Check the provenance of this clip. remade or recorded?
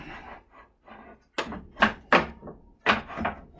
recorded